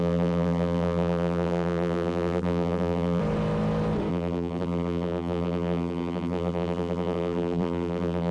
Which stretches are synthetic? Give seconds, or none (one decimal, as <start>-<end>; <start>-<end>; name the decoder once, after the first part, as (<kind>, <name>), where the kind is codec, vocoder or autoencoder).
0.0-3.2 (vocoder, BigVGAN v2); 4.1-8.3